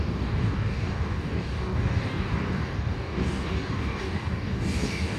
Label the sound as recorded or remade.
remade